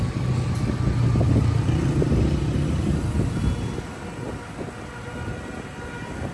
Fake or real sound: real